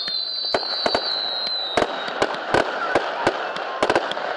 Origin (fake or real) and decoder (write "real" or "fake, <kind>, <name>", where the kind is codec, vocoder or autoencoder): real